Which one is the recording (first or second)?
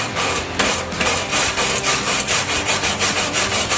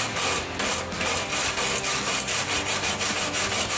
second